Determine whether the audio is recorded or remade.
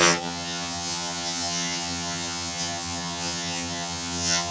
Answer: remade